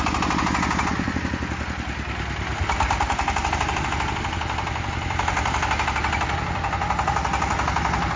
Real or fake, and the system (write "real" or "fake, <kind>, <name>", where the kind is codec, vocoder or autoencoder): real